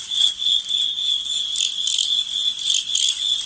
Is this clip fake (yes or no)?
no